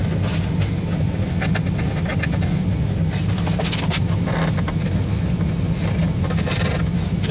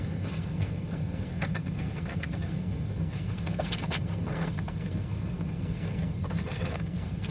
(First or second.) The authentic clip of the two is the first